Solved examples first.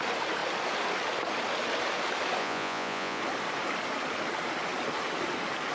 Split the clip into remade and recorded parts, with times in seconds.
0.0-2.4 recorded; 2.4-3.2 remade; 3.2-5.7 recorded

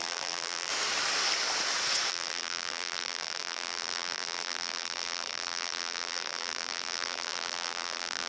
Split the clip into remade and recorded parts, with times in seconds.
0.0-0.7 remade; 0.7-2.1 recorded; 2.1-8.3 remade

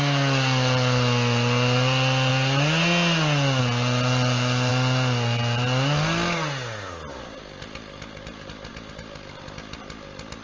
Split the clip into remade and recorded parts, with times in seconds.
0.0-10.4 recorded

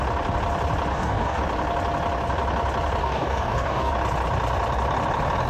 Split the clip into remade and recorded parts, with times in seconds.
0.0-0.9 recorded; 0.9-1.4 remade; 1.4-3.0 recorded; 3.0-3.9 remade; 3.9-5.5 recorded